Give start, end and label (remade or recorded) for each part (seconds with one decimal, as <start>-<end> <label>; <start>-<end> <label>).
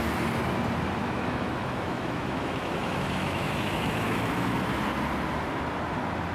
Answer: 0.0-1.0 recorded; 1.0-4.8 remade; 4.8-6.3 recorded